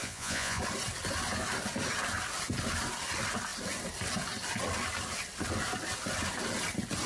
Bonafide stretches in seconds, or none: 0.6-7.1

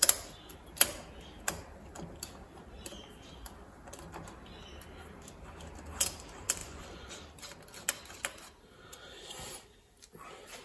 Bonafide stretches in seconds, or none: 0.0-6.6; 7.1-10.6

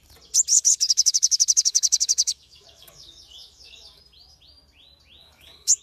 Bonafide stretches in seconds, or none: 0.0-0.5; 4.0-5.2

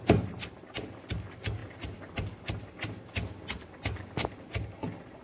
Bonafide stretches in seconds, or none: 0.0-1.6; 2.4-5.2

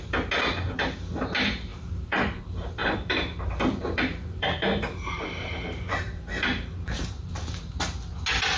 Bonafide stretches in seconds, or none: 0.0-1.7; 2.4-2.8; 7.7-8.6

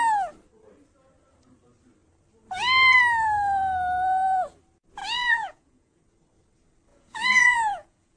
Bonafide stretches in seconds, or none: 0.0-5.0; 6.0-6.9

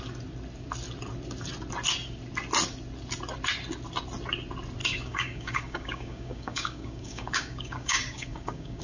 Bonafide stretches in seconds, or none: 0.0-4.8